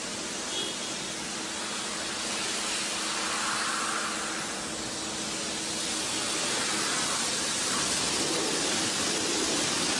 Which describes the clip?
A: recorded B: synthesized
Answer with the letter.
A